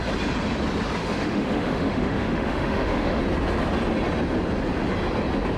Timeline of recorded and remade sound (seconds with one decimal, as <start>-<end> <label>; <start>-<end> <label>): 0.0-1.0 recorded; 1.0-3.2 remade; 3.2-5.6 recorded